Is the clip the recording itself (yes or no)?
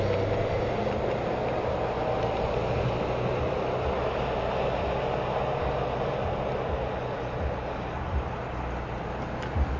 yes